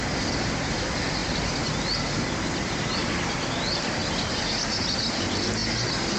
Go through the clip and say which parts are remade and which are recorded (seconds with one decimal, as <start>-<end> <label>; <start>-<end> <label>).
0.0-6.2 recorded